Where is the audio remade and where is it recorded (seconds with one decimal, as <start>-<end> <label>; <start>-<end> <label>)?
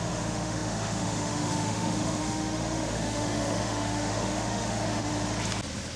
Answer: 0.0-5.1 remade; 5.1-6.0 recorded